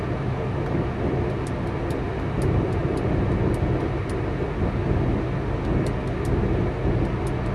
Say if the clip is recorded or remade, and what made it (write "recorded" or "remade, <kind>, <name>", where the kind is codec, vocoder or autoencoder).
recorded